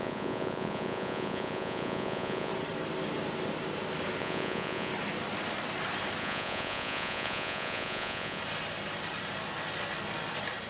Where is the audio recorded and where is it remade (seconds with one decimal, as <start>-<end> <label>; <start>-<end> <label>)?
0.0-2.5 remade; 2.5-4.2 recorded; 4.2-4.9 remade; 4.9-6.2 recorded; 6.2-8.4 remade; 8.4-10.7 recorded